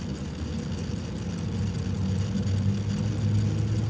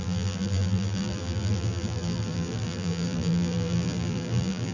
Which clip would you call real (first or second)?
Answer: first